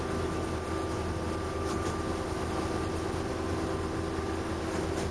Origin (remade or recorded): recorded